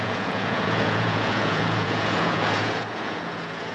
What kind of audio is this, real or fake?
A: fake